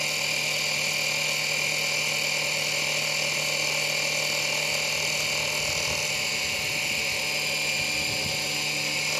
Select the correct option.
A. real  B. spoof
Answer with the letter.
A